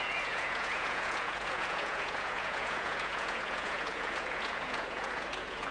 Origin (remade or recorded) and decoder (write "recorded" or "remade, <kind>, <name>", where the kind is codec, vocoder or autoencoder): remade, vocoder, Vocos